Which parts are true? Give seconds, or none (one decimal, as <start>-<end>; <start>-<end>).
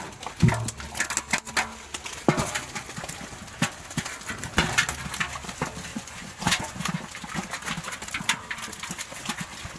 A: 0.0-5.9; 6.8-9.8